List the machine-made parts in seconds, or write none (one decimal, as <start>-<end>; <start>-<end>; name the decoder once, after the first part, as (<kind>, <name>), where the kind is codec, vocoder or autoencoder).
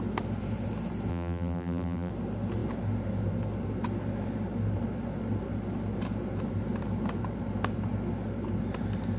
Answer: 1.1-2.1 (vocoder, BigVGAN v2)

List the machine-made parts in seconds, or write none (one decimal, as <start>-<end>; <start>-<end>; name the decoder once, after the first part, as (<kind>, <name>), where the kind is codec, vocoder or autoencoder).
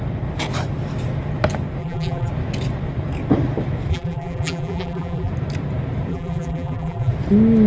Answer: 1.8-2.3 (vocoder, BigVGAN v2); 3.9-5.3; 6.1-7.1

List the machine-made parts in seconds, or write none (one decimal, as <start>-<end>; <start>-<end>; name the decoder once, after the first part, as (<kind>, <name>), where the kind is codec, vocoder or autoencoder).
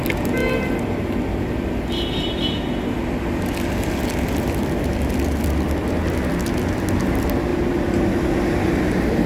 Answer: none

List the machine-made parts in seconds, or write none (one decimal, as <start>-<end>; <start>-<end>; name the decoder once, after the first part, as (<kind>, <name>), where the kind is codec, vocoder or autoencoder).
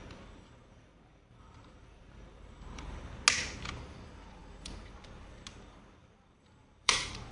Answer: 0.6-3.0 (vocoder, BigVGAN v2); 6.0-7.3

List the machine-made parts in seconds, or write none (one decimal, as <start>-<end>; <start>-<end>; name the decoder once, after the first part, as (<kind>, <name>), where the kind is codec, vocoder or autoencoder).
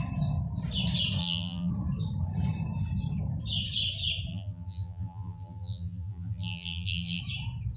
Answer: 1.2-1.7 (vocoder, BigVGAN v2); 4.3-7.2